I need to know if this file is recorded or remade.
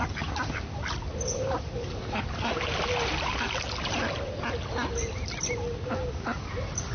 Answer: recorded